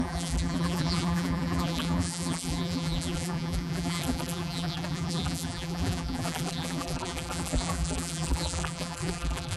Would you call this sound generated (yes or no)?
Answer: yes